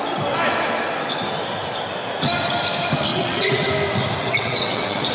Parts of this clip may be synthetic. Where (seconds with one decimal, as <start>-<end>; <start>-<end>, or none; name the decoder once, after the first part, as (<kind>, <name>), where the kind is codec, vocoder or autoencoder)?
3.1-3.7 (vocoder, WaveNeXt); 4.2-5.1